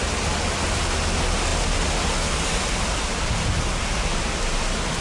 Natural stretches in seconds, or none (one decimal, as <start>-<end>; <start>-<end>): 0.0-5.0